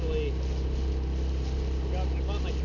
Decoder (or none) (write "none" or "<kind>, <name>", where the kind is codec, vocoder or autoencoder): none